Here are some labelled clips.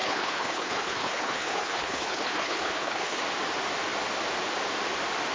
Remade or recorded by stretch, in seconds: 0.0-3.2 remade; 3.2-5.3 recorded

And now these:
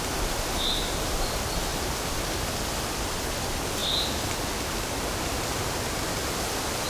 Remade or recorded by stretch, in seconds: 0.0-6.9 recorded

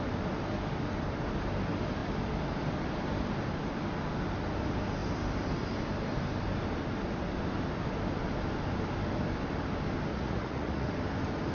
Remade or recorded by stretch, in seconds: 0.0-10.1 recorded; 10.1-10.9 remade; 10.9-11.5 recorded